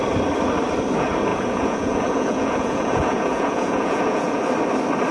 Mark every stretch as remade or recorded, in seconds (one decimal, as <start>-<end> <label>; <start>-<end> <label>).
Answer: 0.0-1.3 recorded; 1.3-4.4 remade; 4.4-5.1 recorded